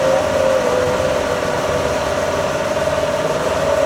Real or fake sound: real